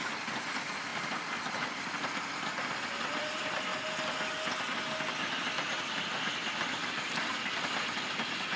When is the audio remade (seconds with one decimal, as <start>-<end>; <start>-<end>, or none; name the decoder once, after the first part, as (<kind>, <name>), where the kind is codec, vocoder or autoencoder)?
0.0-3.7 (vocoder, BigVGAN v2); 5.1-8.6